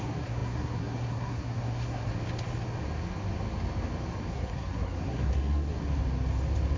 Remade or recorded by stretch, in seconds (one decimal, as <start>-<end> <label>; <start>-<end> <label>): 0.0-2.1 remade; 2.1-4.3 recorded; 4.3-5.8 remade; 5.8-6.8 recorded